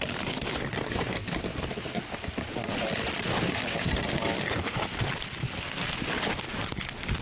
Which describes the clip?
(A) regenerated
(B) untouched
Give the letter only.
B